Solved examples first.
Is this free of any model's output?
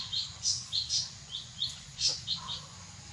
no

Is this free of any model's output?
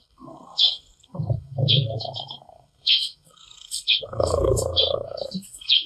no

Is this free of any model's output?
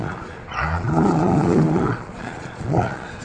no